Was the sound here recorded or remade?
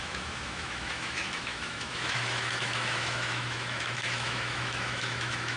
remade